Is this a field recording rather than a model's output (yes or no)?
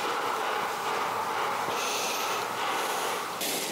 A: yes